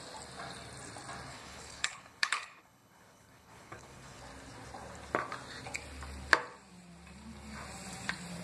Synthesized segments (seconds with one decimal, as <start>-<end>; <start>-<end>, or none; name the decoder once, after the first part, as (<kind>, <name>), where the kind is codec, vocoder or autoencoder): 1.3-4.2 (codec, HILCodec)